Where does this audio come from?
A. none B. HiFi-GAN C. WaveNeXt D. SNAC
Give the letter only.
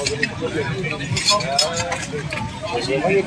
A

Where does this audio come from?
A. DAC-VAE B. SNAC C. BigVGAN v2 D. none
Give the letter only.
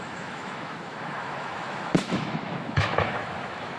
A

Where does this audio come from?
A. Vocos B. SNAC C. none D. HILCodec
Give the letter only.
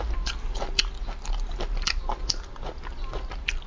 C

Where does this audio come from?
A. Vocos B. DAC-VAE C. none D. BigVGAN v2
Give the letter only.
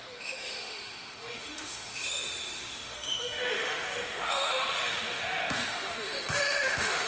B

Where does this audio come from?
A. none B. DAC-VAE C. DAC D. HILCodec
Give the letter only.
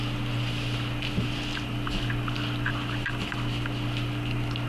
A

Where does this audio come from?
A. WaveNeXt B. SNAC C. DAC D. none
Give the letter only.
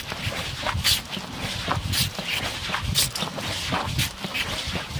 D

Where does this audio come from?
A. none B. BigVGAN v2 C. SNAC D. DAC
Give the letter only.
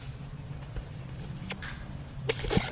B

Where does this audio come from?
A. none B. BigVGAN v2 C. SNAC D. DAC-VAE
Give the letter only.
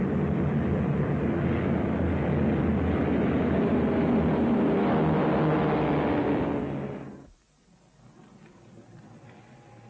A